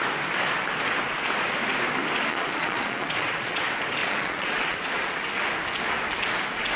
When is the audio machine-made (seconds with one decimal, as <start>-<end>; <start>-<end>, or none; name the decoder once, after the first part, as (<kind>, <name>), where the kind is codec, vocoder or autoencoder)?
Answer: 2.3-3.6 (vocoder, Vocos); 4.0-5.2